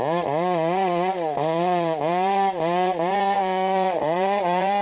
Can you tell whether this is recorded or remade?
remade